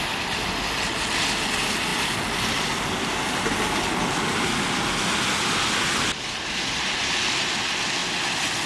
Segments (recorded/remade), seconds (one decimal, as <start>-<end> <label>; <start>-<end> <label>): 0.0-8.7 recorded